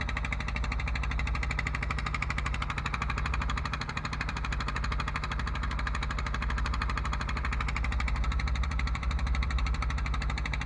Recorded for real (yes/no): no